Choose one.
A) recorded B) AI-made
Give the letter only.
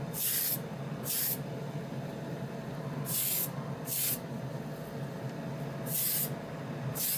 B